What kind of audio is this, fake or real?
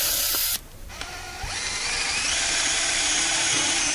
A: fake